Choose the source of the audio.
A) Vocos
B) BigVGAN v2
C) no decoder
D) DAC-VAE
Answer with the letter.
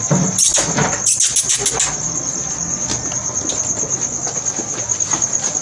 C